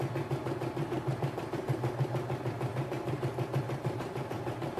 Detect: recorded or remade recorded